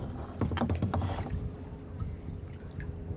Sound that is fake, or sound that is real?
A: real